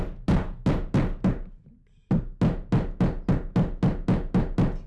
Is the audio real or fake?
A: real